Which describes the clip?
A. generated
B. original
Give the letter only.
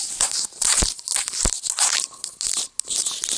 B